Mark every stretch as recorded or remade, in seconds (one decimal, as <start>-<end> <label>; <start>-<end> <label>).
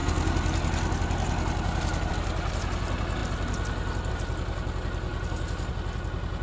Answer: 0.0-6.4 recorded